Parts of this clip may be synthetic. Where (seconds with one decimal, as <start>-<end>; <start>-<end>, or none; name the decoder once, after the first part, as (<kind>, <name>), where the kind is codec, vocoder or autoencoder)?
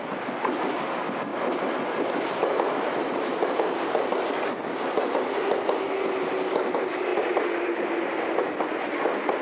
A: none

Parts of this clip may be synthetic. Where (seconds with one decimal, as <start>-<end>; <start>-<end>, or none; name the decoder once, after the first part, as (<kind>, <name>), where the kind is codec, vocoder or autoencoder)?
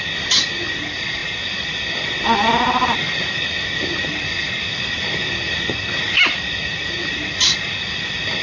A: none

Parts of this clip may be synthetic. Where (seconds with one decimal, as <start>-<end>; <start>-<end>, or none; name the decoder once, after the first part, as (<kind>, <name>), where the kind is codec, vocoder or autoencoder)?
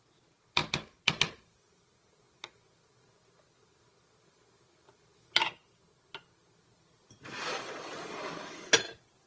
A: none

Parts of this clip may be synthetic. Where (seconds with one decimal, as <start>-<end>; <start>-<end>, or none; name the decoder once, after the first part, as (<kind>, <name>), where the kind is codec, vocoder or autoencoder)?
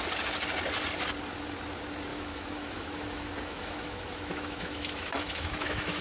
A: 2.1-6.0 (autoencoder, DAC-VAE)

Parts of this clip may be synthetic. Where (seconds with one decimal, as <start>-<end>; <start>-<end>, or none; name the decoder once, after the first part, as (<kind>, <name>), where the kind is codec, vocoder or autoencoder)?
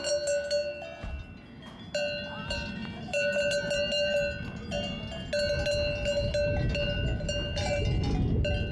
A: none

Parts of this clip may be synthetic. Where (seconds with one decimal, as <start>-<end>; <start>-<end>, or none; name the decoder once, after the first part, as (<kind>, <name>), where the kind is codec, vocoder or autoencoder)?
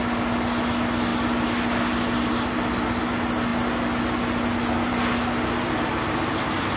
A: none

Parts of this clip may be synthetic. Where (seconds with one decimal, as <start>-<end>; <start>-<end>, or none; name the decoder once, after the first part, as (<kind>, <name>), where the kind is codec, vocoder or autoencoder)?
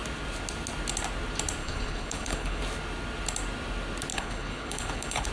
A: 1.6-2.6 (codec, HILCodec); 4.1-5.3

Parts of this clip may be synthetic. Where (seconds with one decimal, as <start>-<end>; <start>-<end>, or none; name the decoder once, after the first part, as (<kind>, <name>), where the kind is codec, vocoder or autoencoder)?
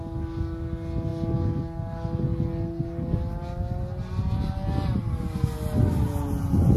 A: none